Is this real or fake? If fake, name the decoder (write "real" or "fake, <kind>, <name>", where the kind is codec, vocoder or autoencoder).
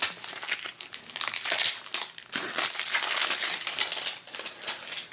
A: real